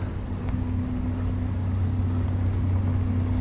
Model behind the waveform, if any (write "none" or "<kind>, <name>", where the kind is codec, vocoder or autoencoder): none